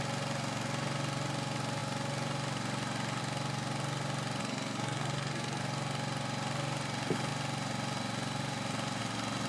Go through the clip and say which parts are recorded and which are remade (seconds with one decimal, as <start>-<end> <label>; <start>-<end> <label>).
0.0-4.4 recorded; 4.4-5.6 remade; 5.6-9.5 recorded